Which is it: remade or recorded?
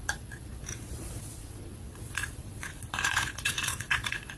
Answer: remade